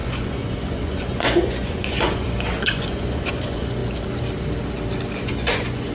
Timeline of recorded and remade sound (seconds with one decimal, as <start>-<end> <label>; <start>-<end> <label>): 0.0-3.8 remade; 3.8-5.2 recorded; 5.2-5.9 remade